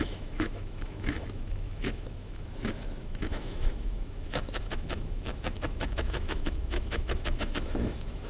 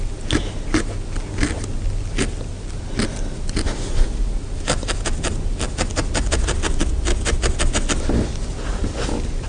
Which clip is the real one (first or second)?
second